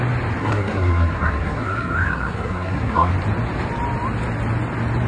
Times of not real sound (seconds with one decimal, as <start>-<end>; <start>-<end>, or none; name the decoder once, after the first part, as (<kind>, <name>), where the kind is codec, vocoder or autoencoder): 0.4-3.1 (codec, SNAC)